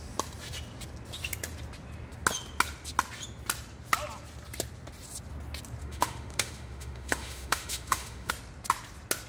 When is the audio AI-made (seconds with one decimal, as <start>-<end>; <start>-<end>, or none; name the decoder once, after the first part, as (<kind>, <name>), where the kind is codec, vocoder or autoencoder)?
5.8-8.3 (autoencoder, DAC-VAE)